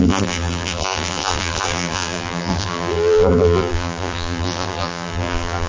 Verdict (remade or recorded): remade